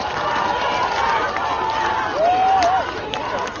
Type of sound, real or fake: real